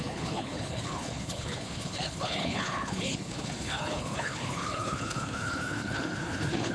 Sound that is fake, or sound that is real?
fake